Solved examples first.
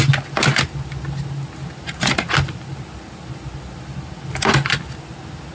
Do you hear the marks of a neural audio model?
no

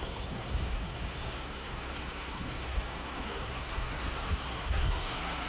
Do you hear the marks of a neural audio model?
yes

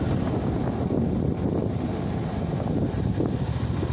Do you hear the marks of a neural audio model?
no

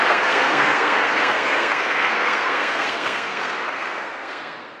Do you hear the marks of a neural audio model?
yes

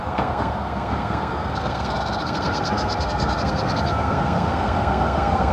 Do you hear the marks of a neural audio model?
yes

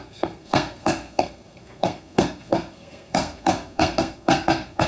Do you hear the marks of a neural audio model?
yes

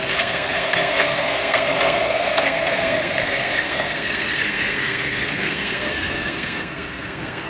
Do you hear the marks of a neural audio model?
yes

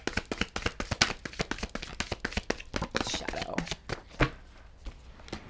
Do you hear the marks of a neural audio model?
no